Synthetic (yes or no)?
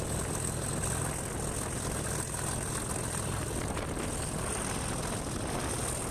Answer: no